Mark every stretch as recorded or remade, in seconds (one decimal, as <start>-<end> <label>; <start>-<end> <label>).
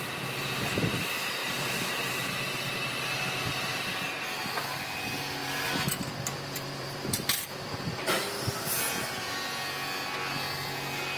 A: 0.0-5.4 recorded; 5.4-7.7 remade; 7.7-11.2 recorded